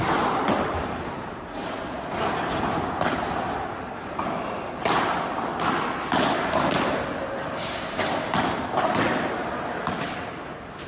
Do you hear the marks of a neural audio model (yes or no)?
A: no